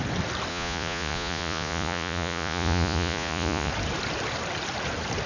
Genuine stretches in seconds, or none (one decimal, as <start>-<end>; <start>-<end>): 0.0-0.5; 3.7-5.3